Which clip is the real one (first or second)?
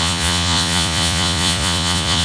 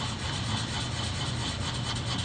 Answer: second